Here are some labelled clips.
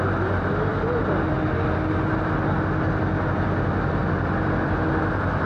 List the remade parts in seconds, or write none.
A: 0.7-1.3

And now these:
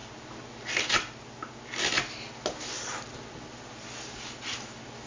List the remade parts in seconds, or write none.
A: none

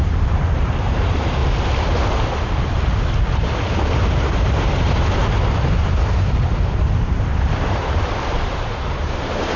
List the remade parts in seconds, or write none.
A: 0.0-1.4; 4.1-9.6

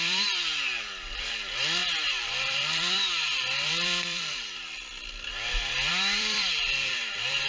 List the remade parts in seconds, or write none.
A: 0.0-5.3; 5.9-7.5

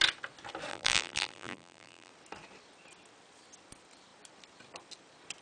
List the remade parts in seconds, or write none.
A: 0.7-2.1